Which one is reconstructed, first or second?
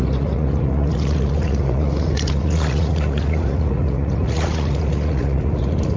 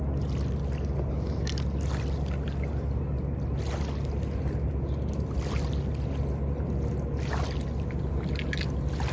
first